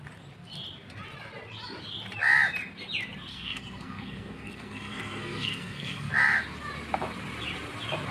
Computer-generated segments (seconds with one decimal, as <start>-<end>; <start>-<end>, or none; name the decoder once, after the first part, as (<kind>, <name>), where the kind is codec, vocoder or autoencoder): 3.3-6.1 (codec, SNAC)